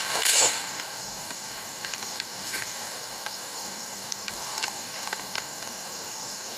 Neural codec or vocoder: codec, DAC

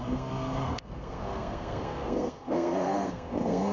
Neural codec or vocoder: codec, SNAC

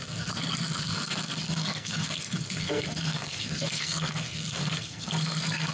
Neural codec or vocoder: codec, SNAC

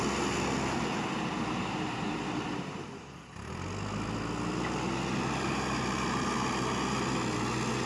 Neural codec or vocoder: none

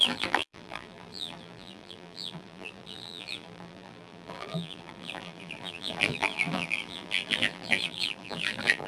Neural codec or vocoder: vocoder, BigVGAN v2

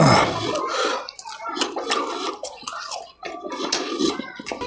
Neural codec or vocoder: none